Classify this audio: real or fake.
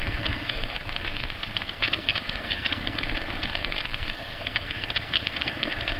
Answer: fake